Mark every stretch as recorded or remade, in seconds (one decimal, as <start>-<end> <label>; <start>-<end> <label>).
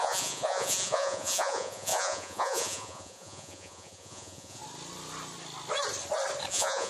0.0-4.6 remade; 4.6-6.5 recorded; 6.5-6.9 remade